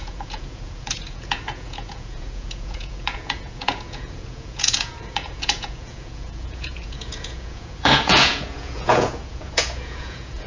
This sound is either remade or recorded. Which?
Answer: remade